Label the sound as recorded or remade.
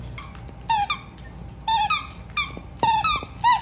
recorded